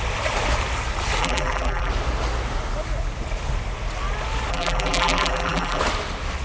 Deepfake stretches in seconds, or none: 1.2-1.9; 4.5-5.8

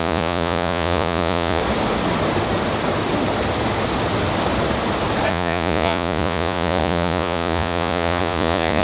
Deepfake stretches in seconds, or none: 0.0-1.6; 5.3-8.8

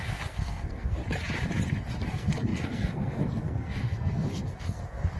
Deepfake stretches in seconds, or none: 0.0-1.0; 2.1-5.2

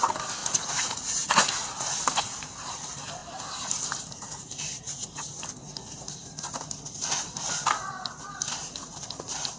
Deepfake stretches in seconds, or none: 0.4-1.9

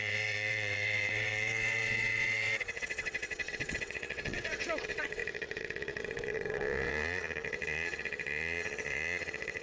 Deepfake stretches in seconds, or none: 0.0-9.6